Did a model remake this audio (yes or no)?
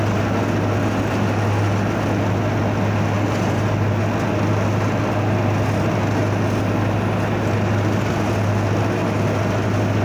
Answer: no